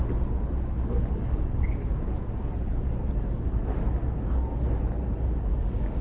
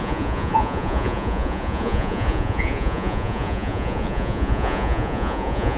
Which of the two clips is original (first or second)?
first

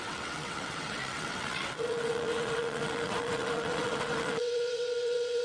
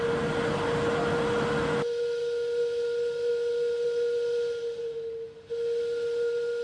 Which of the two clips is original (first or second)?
second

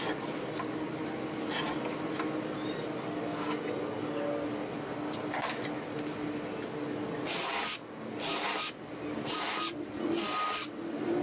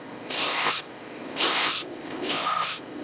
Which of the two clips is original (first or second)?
first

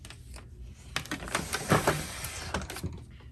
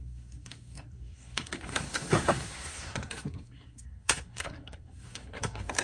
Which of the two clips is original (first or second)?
first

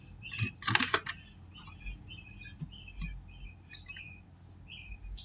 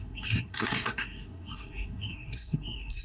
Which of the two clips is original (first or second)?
first